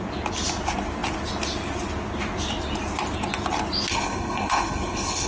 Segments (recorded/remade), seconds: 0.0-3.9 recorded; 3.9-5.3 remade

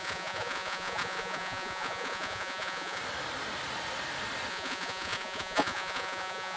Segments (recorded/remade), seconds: 0.0-3.0 remade; 3.0-4.5 recorded; 4.5-6.6 remade

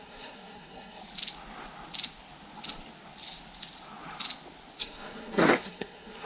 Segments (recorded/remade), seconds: 0.0-1.0 remade; 1.0-4.8 recorded; 4.8-6.3 remade

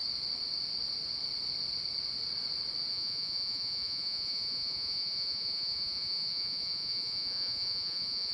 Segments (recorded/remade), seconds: 0.0-2.9 recorded; 2.9-8.3 remade

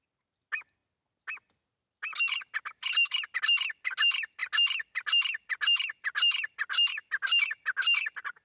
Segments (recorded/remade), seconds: 0.0-8.4 recorded

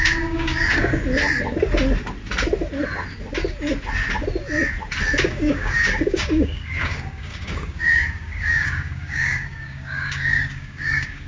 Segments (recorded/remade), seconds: 0.0-1.0 remade; 1.0-5.2 recorded; 5.2-11.3 remade